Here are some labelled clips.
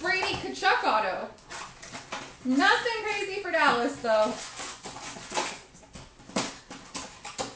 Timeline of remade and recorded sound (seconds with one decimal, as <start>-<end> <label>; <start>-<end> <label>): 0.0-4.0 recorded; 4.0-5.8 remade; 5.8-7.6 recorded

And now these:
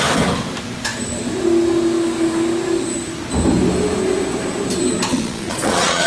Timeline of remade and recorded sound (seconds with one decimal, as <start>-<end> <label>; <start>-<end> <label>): 0.0-5.1 recorded; 5.1-6.1 remade

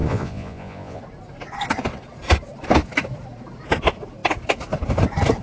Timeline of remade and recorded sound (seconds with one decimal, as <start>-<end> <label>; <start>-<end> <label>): 0.0-1.0 remade; 1.0-5.4 recorded

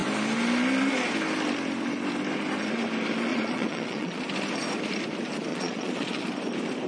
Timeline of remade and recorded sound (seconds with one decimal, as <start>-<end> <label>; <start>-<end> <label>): 0.0-3.3 recorded; 3.3-4.2 remade; 4.2-5.5 recorded; 5.5-6.2 remade; 6.2-6.9 recorded